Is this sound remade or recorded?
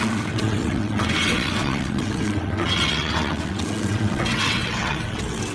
remade